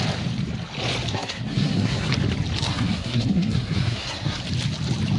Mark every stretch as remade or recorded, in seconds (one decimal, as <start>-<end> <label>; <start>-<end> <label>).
0.0-1.1 recorded; 1.1-2.1 remade; 2.1-2.7 recorded; 2.7-4.4 remade; 4.4-5.2 recorded